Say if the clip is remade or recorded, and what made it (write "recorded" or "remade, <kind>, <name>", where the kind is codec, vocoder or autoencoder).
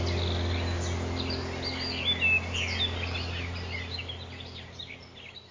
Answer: recorded